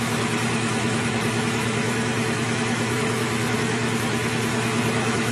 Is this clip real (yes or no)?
no